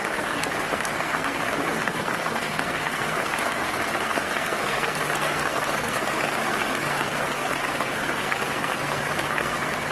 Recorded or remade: remade